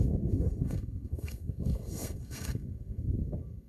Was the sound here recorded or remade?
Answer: remade